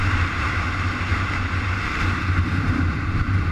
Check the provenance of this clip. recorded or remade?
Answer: remade